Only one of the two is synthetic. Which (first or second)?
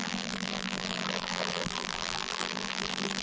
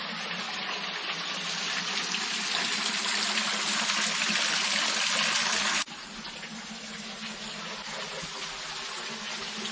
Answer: first